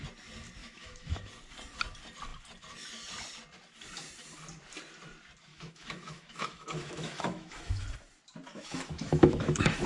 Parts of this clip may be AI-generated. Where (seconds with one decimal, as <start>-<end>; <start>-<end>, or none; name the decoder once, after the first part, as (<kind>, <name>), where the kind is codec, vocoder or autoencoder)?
0.6-1.3 (autoencoder, DAC-VAE); 5.5-7.8; 8.5-9.9